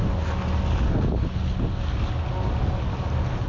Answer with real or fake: real